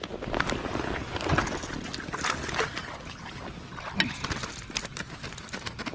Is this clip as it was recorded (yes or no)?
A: yes